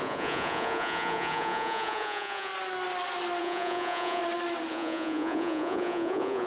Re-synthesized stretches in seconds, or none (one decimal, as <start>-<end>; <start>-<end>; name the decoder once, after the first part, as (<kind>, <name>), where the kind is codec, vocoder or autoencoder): 0.0-2.5 (vocoder, Vocos); 3.4-4.2; 4.7-6.5